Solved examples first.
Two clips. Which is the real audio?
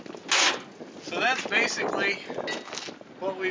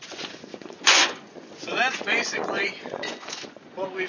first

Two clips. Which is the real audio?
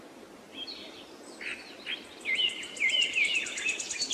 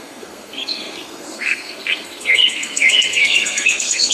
first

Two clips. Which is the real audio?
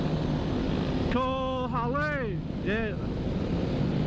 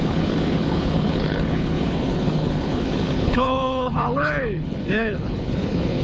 first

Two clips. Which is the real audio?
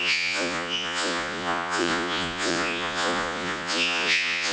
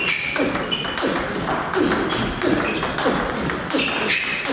second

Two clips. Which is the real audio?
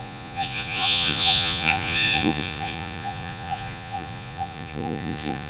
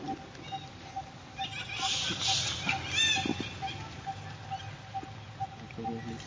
second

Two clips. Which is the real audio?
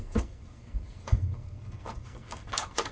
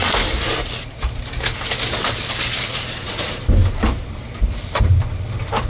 second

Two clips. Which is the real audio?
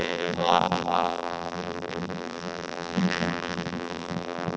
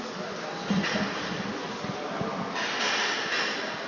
second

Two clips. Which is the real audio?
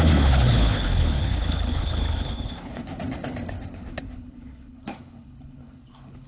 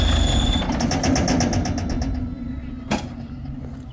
second